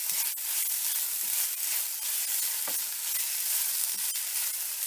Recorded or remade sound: recorded